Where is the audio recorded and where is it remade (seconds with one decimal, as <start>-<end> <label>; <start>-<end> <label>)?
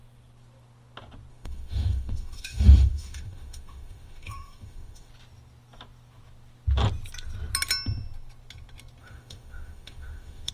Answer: 0.0-1.3 recorded; 1.3-5.1 remade; 5.1-9.0 recorded; 9.0-10.5 remade